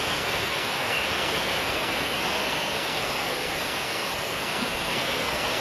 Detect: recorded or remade remade